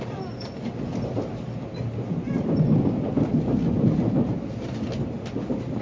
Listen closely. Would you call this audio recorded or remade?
recorded